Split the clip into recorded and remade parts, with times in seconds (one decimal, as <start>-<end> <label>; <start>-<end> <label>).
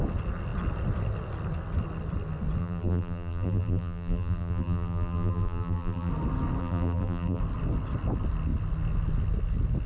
0.0-2.6 recorded; 2.6-6.1 remade; 6.1-6.6 recorded; 6.6-7.4 remade; 7.4-9.9 recorded